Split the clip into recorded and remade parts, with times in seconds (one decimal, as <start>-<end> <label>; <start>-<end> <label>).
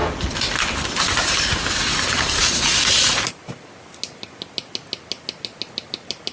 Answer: 0.0-2.9 remade; 2.9-6.3 recorded